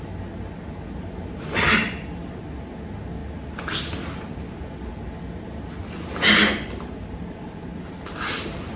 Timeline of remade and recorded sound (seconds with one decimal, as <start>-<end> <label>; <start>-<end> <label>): 0.0-8.8 recorded